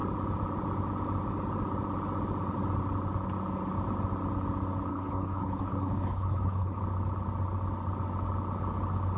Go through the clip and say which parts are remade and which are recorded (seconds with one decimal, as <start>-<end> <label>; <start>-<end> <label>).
0.0-4.9 recorded; 4.9-6.8 remade; 6.8-9.2 recorded